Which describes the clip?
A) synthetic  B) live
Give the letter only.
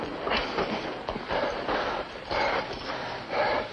B